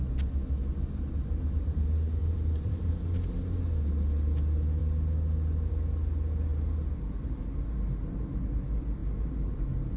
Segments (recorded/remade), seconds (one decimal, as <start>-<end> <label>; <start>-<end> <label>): 0.0-2.2 recorded; 2.2-2.9 remade; 2.9-10.0 recorded